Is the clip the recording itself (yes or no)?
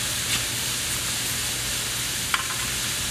yes